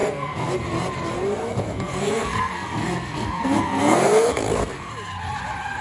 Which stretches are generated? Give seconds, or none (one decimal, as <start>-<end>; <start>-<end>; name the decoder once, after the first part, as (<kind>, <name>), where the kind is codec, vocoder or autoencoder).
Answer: 0.0-0.5 (codec, SNAC); 1.4-4.9

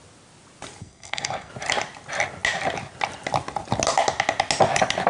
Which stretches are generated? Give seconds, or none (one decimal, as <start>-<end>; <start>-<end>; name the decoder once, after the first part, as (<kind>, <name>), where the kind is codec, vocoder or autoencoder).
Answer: 0.8-1.5 (codec, SNAC)

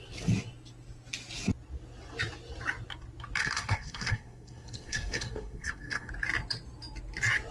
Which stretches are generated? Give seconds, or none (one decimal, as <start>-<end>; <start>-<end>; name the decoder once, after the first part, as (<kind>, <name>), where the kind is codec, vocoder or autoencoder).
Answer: 3.4-6.1 (codec, SNAC)

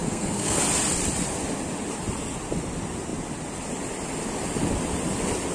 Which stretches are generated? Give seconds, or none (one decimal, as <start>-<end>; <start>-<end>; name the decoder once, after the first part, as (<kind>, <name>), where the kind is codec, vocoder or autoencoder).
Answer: 0.0-0.6 (codec, SNAC)

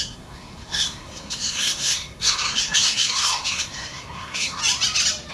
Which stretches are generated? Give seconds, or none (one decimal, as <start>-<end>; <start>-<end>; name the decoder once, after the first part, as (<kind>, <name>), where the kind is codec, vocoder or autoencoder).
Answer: 0.0-4.6 (codec, SNAC)

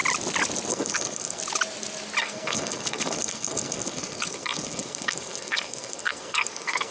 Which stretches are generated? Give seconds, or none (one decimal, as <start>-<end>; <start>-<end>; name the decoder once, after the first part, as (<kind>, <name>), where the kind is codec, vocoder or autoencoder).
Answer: 0.7-1.4 (codec, SNAC); 2.2-6.9

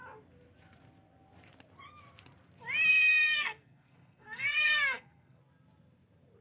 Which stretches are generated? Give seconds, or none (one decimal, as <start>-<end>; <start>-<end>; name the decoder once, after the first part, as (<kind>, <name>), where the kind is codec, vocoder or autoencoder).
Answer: 2.9-5.4 (codec, SNAC)

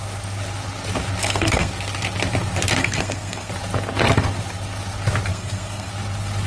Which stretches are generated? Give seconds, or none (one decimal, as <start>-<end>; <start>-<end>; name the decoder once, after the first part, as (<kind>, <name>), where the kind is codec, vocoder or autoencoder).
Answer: 1.2-1.7 (codec, SNAC); 2.8-3.5; 5.3-5.9